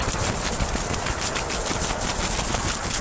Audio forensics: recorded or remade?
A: recorded